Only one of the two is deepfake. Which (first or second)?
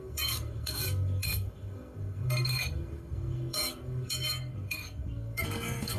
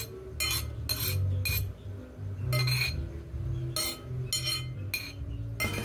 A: first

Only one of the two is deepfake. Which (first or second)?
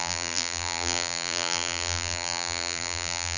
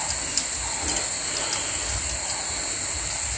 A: first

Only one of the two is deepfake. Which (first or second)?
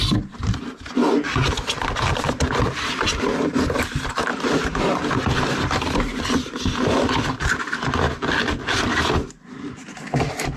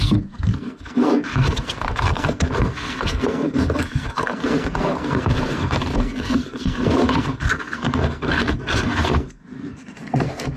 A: second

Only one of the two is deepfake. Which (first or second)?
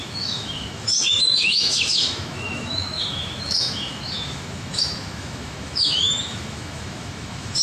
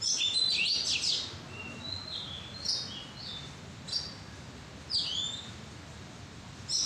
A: first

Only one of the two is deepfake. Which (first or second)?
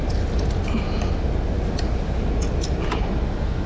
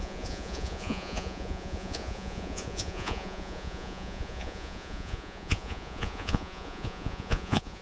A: second